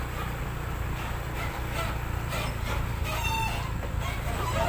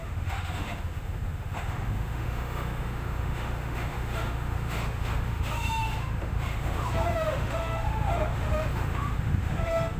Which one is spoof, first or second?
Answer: second